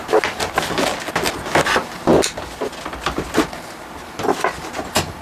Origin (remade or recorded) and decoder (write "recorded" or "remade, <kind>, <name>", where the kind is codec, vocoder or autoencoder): recorded